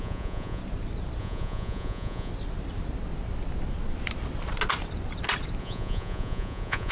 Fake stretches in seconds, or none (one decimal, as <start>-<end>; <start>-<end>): 0.0-0.6; 1.2-2.3; 5.6-6.9